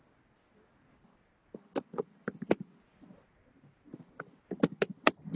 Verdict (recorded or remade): recorded